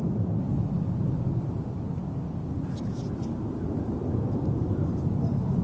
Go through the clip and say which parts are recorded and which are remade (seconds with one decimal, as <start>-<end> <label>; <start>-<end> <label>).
0.0-5.6 recorded